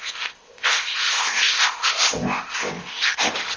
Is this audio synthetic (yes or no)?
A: yes